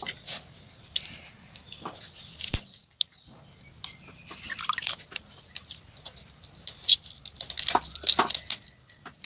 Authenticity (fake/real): real